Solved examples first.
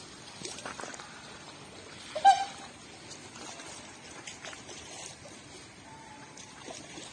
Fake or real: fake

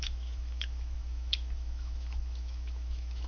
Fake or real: fake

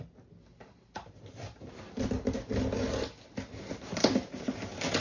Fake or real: real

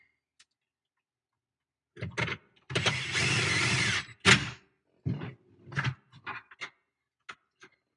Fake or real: real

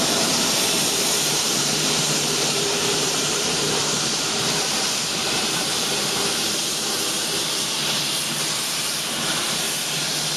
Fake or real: fake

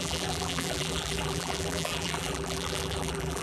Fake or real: fake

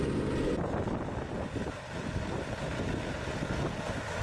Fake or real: real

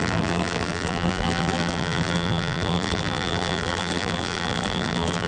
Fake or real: fake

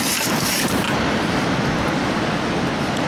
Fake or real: real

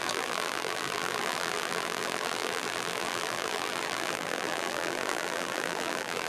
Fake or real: fake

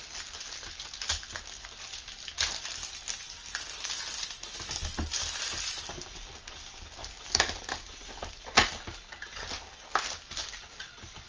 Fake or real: real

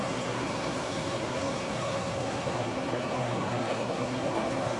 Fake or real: fake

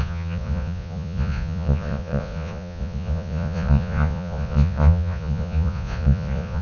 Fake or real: fake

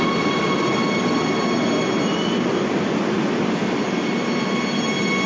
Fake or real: real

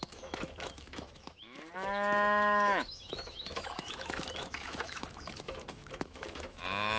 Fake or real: fake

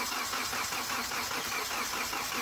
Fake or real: real